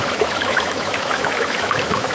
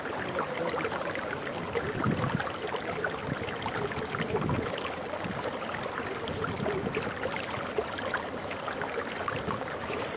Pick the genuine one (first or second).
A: second